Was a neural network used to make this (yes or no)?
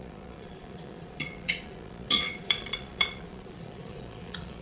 yes